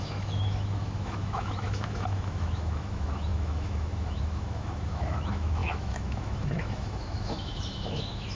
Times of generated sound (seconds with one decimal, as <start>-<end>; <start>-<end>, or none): 0.0-8.3